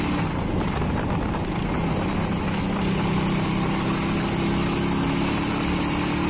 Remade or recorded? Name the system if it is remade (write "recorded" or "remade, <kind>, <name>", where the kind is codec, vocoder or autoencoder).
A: recorded